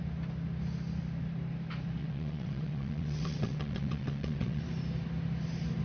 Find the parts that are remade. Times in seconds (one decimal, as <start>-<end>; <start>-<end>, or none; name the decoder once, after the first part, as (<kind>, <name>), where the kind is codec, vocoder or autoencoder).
2.0-4.6 (vocoder, WaveNeXt)